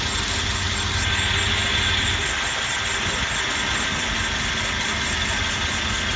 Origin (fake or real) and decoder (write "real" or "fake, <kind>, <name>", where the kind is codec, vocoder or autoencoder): real